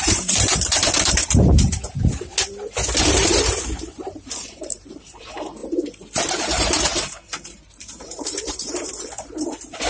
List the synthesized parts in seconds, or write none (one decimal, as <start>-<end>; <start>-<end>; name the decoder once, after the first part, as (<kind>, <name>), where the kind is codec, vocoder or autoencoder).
0.0-2.3 (vocoder, BigVGAN v2); 3.1-5.6; 6.4-9.9